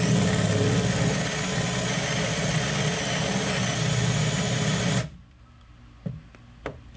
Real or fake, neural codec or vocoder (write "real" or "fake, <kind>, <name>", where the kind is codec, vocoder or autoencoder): real